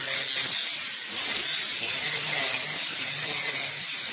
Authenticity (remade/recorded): recorded